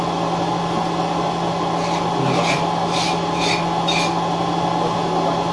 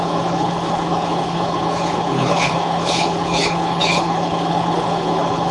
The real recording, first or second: first